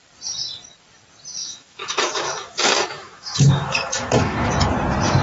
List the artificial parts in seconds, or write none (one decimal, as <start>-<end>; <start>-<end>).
1.4-4.5